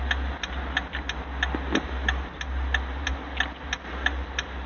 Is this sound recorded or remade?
recorded